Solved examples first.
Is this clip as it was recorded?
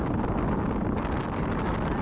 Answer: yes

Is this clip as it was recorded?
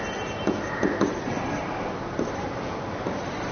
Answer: yes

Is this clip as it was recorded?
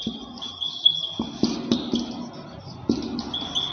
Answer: yes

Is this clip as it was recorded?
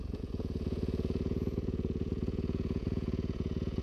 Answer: no